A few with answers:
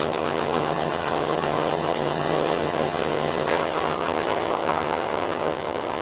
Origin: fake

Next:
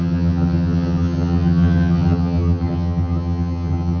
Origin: fake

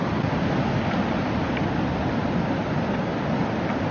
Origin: real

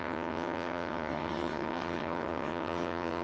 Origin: fake